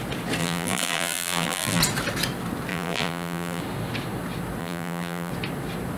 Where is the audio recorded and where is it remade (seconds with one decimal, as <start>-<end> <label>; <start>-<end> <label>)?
0.0-0.4 recorded; 0.4-1.8 remade; 1.8-2.7 recorded; 2.7-3.6 remade; 3.6-4.6 recorded; 4.6-5.3 remade; 5.3-6.0 recorded

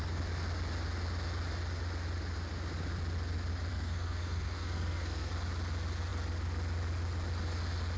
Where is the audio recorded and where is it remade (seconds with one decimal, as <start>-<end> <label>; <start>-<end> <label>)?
0.0-3.7 recorded; 3.7-5.3 remade; 5.3-8.0 recorded

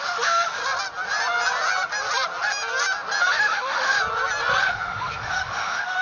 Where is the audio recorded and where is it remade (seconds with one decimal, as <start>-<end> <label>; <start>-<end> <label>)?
0.0-0.6 remade; 0.6-3.3 recorded; 3.3-4.0 remade; 4.0-4.6 recorded; 4.6-6.0 remade

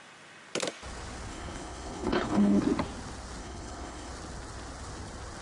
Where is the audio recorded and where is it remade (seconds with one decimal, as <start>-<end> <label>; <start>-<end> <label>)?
0.0-1.3 recorded; 1.3-2.6 remade; 2.6-3.4 recorded; 3.4-4.1 remade; 4.1-5.4 recorded